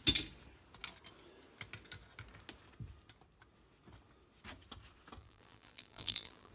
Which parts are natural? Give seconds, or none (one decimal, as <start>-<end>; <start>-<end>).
0.0-5.2